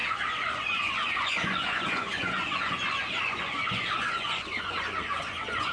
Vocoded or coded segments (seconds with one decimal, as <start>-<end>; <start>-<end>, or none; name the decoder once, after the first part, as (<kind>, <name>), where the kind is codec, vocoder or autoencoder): 0.0-5.7 (vocoder, Vocos)